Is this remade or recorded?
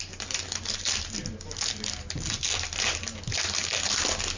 recorded